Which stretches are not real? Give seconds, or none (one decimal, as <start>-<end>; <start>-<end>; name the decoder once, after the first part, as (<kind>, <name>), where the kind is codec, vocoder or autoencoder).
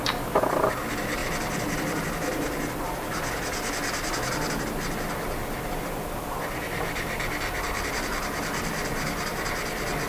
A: none